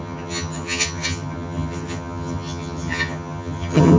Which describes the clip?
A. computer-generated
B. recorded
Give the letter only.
A